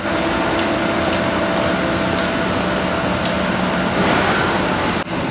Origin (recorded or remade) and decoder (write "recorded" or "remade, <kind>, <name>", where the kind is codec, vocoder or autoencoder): recorded